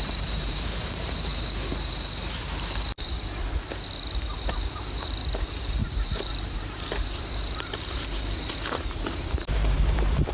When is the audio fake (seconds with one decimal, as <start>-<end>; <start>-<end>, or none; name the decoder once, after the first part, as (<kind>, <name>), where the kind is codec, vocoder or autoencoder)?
0.0-1.3 (vocoder, BigVGAN v2); 4.8-10.3